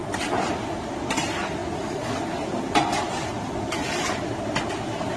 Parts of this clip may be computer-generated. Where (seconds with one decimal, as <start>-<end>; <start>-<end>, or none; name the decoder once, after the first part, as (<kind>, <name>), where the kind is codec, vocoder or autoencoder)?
none